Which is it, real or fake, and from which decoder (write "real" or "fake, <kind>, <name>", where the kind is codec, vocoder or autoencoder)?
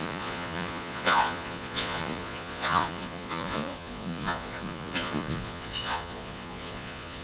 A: fake, vocoder, Vocos